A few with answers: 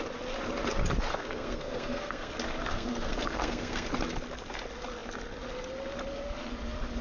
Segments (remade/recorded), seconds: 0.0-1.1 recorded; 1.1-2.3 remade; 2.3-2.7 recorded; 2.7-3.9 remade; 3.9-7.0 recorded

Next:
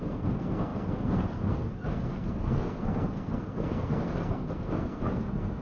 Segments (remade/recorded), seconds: 0.0-5.6 remade

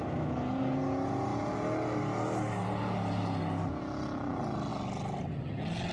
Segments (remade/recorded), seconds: 0.0-5.9 recorded

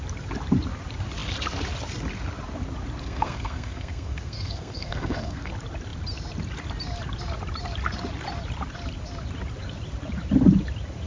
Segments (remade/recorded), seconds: 0.0-3.0 recorded; 3.0-5.5 remade; 5.5-11.1 recorded